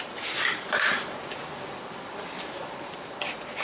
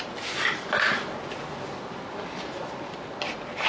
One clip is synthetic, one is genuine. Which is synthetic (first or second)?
first